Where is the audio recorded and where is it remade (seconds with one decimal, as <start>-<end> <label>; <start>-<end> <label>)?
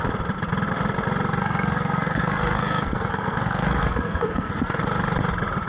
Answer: 0.0-1.4 recorded; 1.4-4.8 remade; 4.8-5.7 recorded